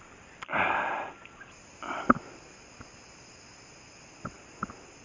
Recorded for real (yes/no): yes